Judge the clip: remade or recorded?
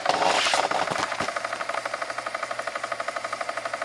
recorded